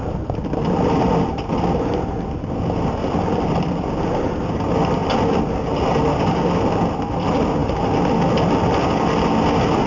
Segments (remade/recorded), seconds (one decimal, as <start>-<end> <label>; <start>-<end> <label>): 0.0-9.9 recorded